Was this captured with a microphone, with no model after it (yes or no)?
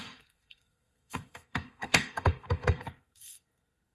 no